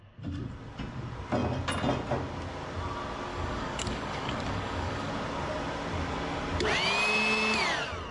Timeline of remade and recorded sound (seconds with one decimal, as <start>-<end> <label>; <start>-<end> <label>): 0.0-3.3 recorded; 3.3-5.1 remade; 5.1-8.1 recorded

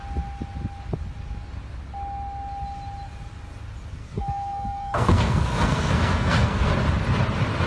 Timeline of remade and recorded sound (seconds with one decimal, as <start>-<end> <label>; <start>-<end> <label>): 0.0-4.0 recorded; 4.0-6.7 remade; 6.7-7.7 recorded

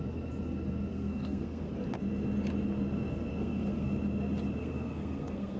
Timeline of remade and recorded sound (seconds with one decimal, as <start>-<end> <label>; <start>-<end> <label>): 0.0-0.9 recorded; 0.9-1.7 remade; 1.7-3.3 recorded; 3.3-3.9 remade; 3.9-4.6 recorded; 4.6-5.6 remade

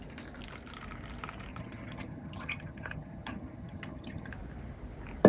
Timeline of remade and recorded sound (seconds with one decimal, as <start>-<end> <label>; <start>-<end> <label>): 0.0-1.5 recorded; 1.5-4.3 remade; 4.3-5.3 recorded

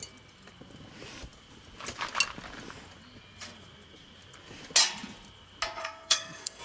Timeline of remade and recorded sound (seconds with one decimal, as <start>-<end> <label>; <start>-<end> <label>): 0.0-5.8 recorded; 5.8-6.6 remade

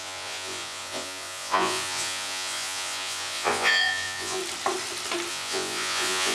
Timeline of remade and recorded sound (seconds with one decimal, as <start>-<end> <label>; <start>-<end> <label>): 0.0-4.4 remade; 4.4-5.3 recorded; 5.3-6.3 remade

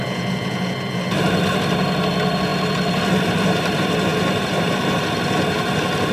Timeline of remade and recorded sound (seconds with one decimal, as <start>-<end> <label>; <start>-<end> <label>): 0.0-6.1 recorded